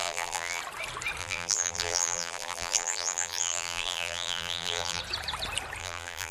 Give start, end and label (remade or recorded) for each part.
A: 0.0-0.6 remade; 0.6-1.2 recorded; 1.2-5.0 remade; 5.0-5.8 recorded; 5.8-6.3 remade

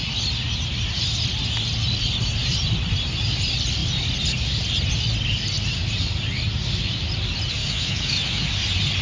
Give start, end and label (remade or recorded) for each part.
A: 0.0-7.6 recorded; 7.6-8.5 remade; 8.5-9.0 recorded